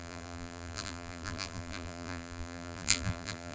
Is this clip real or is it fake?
fake